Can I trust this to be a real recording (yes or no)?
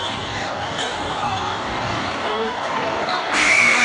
no